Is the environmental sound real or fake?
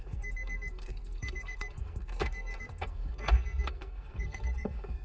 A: fake